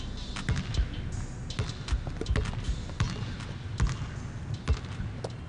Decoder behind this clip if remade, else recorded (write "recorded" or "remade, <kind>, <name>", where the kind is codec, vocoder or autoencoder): recorded